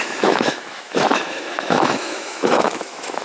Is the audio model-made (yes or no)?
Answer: yes